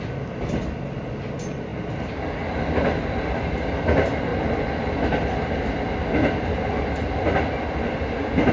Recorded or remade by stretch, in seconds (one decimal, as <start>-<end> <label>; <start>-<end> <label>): 0.0-8.5 recorded